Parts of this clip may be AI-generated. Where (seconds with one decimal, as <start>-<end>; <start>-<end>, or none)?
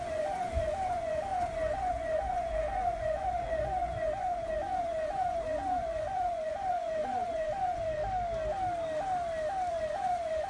0.0-8.0; 9.7-10.5